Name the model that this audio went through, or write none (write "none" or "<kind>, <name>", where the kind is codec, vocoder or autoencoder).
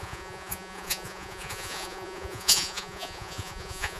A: vocoder, Vocos